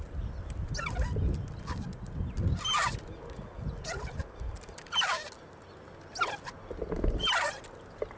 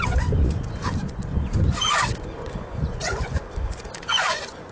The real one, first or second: first